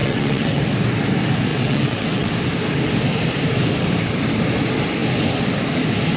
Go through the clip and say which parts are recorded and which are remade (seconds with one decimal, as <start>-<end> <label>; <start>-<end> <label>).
0.0-0.6 remade; 0.6-1.5 recorded; 1.5-2.3 remade; 2.3-6.2 recorded